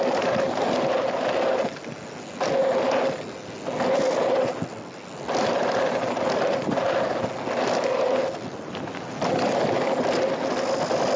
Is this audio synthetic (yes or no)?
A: no